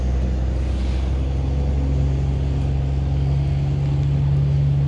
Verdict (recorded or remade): recorded